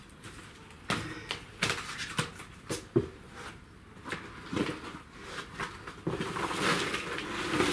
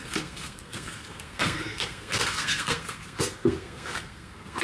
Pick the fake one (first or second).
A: second